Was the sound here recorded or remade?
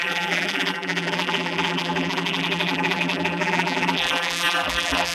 remade